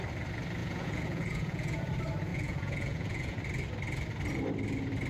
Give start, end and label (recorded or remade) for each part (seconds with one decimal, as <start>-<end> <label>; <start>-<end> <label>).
0.0-0.6 recorded; 0.6-1.9 remade; 1.9-2.3 recorded; 2.3-3.4 remade; 3.4-5.1 recorded